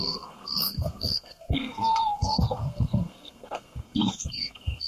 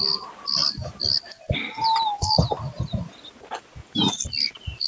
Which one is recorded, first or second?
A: second